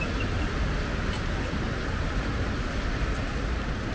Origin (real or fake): real